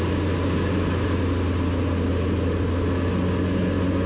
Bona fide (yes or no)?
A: yes